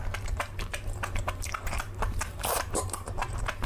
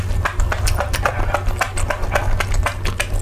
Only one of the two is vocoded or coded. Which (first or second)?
first